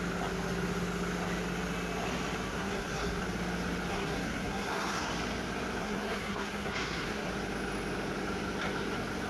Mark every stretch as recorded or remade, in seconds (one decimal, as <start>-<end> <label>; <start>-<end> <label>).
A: 0.0-2.5 recorded; 2.5-3.2 remade; 3.2-3.9 recorded; 3.9-5.1 remade; 5.1-5.8 recorded; 5.8-7.3 remade; 7.3-9.3 recorded